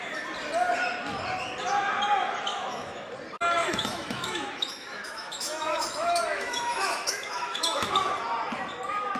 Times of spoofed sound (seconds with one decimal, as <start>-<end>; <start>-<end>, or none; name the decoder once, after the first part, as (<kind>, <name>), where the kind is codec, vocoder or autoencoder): 2.5-3.1 (autoencoder, DAC-VAE); 3.6-7.9